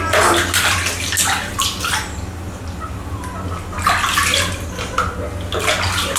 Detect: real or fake real